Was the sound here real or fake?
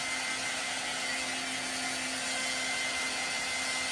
real